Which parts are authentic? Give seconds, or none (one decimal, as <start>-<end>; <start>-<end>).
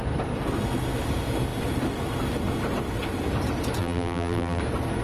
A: 0.0-3.8; 4.6-5.0